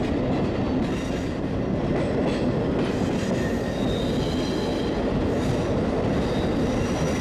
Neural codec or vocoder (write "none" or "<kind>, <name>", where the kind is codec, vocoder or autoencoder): none